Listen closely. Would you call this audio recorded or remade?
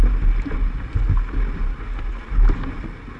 recorded